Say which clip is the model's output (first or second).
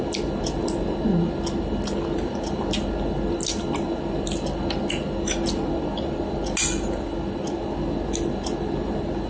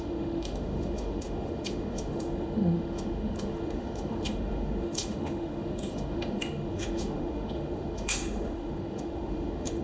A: second